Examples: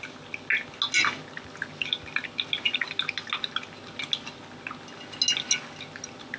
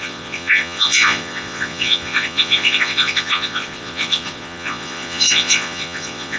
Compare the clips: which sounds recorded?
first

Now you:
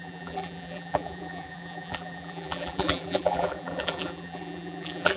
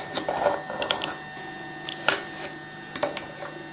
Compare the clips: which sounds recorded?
second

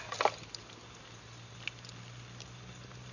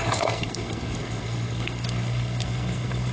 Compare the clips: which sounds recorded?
first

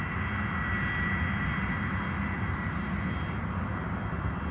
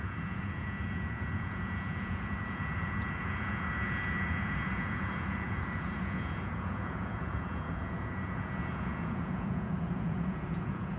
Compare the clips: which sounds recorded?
first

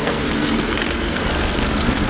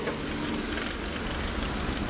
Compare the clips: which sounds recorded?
second